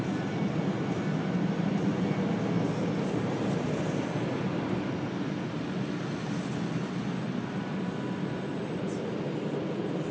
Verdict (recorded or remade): recorded